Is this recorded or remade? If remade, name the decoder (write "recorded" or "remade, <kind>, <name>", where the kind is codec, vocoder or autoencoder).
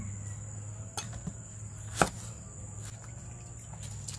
recorded